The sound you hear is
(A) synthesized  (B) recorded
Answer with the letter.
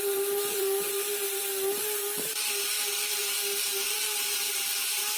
A